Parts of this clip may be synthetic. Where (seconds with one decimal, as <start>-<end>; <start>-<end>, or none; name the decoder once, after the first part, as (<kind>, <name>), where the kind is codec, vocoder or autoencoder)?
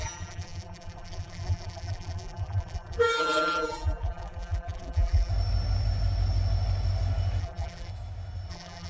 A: 0.0-5.3 (vocoder, BigVGAN v2); 7.4-7.9; 8.5-8.9